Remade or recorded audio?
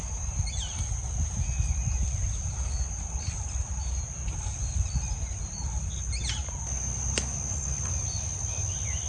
recorded